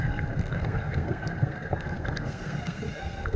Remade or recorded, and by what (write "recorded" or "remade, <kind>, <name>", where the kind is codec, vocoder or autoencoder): remade, codec, SNAC